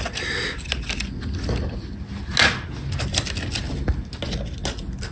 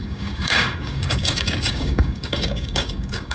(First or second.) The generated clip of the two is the second